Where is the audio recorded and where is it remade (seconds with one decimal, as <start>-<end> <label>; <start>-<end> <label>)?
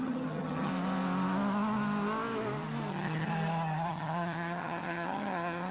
0.0-0.7 remade; 0.7-2.9 recorded; 2.9-3.3 remade; 3.3-3.9 recorded; 3.9-5.7 remade